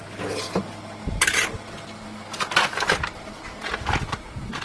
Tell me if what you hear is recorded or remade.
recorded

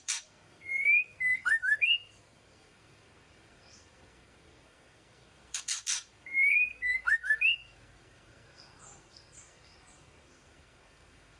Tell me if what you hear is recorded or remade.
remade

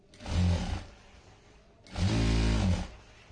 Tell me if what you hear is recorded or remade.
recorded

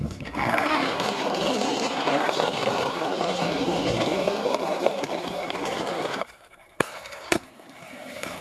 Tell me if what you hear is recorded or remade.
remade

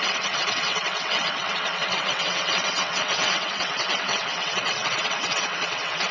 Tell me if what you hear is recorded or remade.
remade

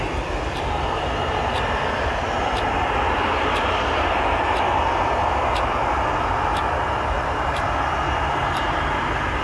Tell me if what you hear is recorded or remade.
recorded